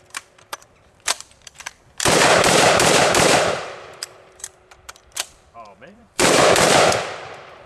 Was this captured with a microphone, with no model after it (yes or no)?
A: no